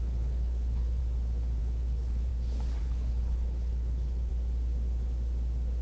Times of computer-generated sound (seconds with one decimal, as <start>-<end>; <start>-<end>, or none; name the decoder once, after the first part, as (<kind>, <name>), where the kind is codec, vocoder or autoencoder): 0.0-1.0 (codec, HILCodec); 1.6-2.3; 2.8-4.3